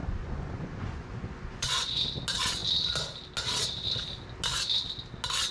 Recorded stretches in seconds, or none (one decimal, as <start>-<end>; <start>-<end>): 2.2-5.5